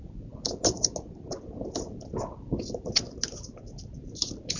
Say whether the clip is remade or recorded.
recorded